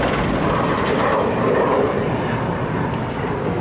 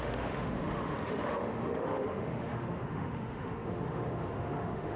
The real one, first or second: first